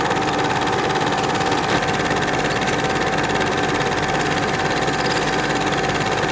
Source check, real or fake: real